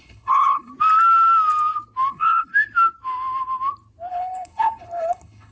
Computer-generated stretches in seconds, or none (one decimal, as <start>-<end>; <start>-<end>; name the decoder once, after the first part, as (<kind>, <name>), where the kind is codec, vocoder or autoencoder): 0.0-0.7 (codec, HILCodec); 2.1-2.5; 4.1-5.5